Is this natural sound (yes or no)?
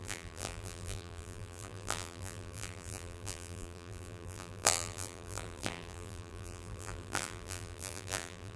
no